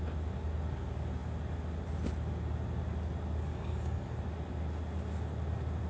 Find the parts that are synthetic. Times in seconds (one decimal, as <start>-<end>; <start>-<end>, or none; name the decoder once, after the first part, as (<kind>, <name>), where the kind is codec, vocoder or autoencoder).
3.5-4.2 (codec, DAC)

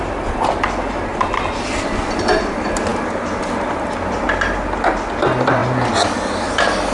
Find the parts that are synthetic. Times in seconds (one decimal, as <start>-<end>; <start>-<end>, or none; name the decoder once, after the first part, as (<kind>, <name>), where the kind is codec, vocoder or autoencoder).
none

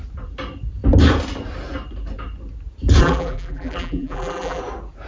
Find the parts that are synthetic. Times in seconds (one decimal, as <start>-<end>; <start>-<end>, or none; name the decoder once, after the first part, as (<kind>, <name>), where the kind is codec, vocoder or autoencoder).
3.0-4.6 (vocoder, BigVGAN v2)

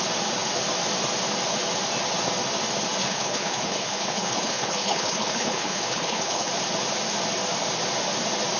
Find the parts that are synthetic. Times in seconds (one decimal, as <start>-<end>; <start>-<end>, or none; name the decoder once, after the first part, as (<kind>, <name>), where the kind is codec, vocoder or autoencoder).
3.0-6.5 (codec, HILCodec)

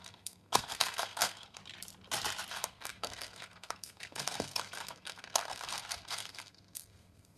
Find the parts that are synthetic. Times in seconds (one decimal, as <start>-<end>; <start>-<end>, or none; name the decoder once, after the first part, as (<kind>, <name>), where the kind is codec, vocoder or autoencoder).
0.0-1.6 (codec, SNAC); 2.5-7.4

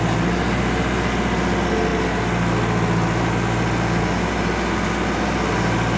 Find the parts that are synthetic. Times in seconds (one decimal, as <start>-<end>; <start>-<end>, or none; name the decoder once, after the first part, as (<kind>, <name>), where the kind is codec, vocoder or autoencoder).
none

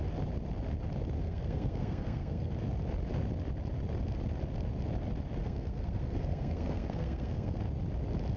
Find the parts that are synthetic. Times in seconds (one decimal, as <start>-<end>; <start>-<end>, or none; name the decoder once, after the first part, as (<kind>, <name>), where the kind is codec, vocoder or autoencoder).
1.2-2.5 (codec, SNAC); 5.4-7.6